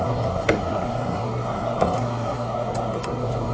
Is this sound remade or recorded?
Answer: remade